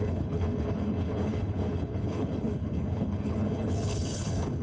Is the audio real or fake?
fake